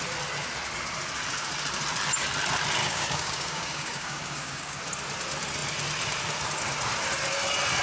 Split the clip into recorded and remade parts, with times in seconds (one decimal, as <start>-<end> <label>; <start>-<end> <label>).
0.0-2.8 recorded; 2.8-4.8 remade; 4.8-7.8 recorded